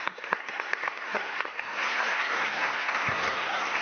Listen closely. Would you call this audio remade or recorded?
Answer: remade